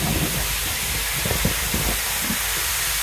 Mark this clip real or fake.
real